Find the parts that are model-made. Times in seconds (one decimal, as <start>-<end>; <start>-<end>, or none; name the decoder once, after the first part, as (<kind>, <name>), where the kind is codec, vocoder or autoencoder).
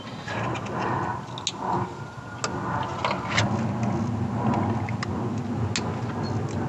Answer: none